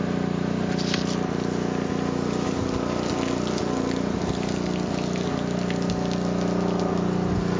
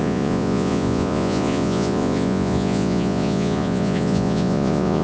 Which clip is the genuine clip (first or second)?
first